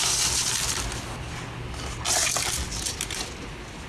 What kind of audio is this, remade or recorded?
recorded